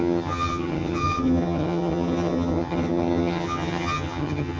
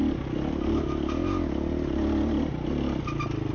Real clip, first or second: second